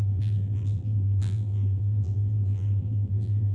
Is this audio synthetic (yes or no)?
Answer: yes